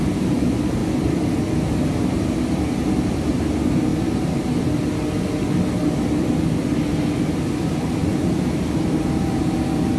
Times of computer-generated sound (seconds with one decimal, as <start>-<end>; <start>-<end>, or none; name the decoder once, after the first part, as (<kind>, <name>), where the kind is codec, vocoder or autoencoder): none